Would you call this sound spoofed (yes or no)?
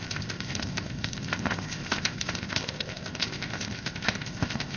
yes